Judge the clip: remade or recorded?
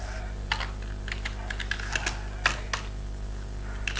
recorded